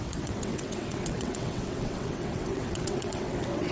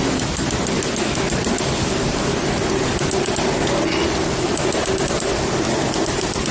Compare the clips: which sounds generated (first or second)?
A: first